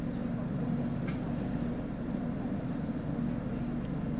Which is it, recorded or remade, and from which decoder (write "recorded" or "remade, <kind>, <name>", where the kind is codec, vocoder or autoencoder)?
recorded